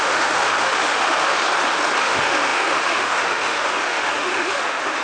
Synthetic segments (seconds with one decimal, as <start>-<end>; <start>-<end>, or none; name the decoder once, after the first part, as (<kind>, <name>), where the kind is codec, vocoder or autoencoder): 0.0-1.4 (autoencoder, DAC-VAE); 2.0-5.0